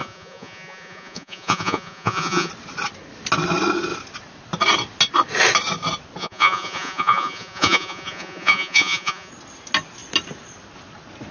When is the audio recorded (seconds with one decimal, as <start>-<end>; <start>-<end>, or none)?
2.5-6.2; 9.3-11.3